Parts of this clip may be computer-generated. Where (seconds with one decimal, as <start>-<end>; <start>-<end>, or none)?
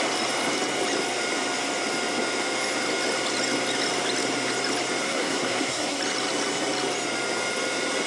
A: 5.0-6.0